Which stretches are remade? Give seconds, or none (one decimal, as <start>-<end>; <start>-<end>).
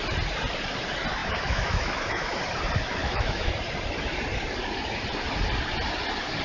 1.2-2.4; 3.0-3.5